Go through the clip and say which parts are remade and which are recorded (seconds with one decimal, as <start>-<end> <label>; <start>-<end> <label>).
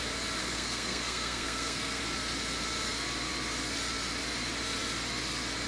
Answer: 0.0-0.4 recorded; 0.4-2.0 remade; 2.0-5.7 recorded